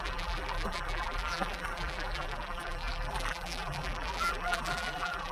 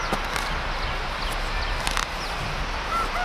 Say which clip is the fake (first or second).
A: first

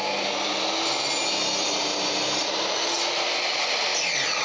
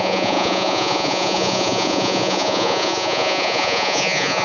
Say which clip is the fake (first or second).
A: second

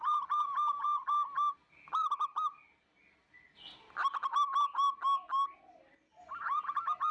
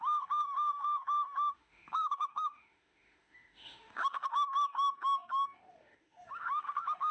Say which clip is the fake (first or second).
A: second